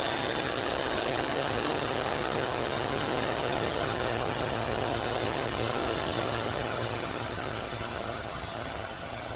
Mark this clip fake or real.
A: fake